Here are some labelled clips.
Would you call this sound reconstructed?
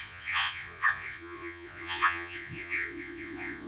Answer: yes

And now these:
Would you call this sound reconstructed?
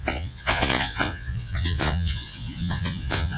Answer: yes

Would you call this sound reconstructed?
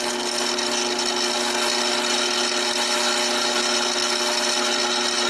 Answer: no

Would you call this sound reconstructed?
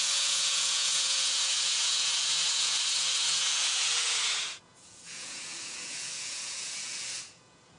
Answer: yes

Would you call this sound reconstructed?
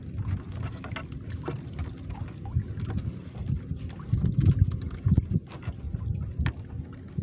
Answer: no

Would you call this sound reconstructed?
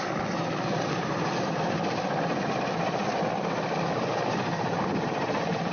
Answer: no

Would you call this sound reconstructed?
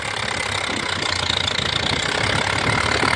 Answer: no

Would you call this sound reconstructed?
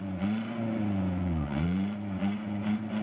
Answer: yes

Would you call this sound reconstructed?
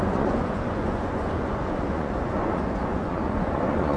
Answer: yes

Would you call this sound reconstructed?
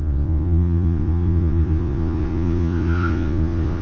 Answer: yes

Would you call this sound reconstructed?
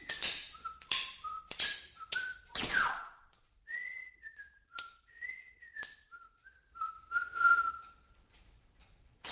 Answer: yes